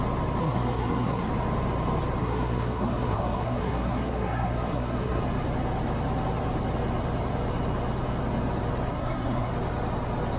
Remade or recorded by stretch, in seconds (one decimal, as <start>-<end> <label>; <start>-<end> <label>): 0.0-0.4 recorded; 0.4-1.3 remade; 1.3-2.2 recorded; 2.2-5.2 remade; 5.2-8.9 recorded; 8.9-9.5 remade; 9.5-10.4 recorded